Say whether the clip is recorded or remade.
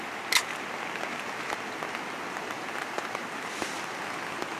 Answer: recorded